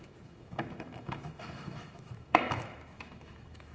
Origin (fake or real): fake